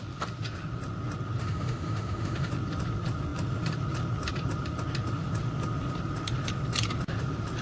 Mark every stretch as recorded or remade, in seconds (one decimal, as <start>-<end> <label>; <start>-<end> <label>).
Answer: 0.0-1.4 recorded; 1.4-2.5 remade; 2.5-7.6 recorded